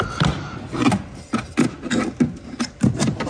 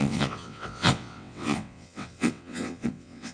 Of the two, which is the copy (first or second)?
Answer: second